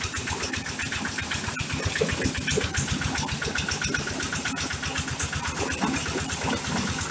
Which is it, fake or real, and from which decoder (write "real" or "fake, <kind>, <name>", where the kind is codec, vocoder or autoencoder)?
real